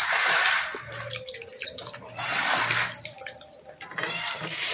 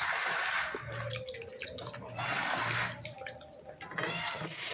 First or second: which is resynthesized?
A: first